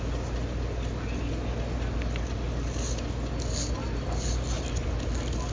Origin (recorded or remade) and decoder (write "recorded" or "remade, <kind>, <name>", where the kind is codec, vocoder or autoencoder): recorded